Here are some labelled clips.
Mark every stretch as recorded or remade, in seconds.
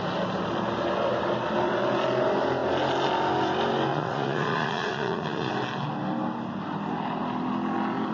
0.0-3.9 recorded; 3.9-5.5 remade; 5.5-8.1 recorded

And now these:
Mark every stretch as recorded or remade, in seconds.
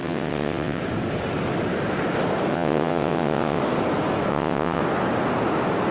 0.0-0.8 remade; 0.8-2.5 recorded; 2.5-3.6 remade; 3.6-4.3 recorded; 4.3-4.8 remade; 4.8-5.9 recorded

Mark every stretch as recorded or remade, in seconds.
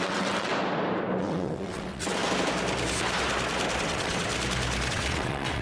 0.0-0.5 remade; 0.5-1.2 recorded; 1.2-2.2 remade; 2.2-3.8 recorded; 3.8-4.3 remade; 4.3-4.9 recorded; 4.9-5.6 remade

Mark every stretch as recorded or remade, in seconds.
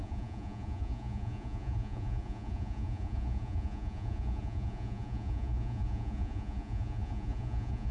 0.0-7.9 remade